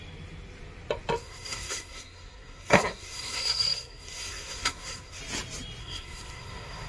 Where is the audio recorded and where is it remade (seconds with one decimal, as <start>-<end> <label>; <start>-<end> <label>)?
0.0-1.2 recorded; 1.2-5.2 remade; 5.2-5.8 recorded; 5.8-6.9 remade